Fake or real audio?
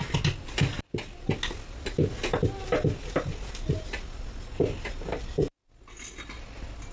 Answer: real